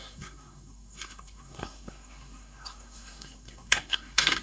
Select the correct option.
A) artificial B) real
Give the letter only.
A